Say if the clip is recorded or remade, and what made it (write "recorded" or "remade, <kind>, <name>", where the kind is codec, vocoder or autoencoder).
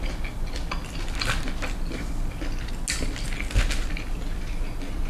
recorded